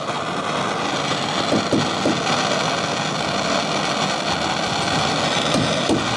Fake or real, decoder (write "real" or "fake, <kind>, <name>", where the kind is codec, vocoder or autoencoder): real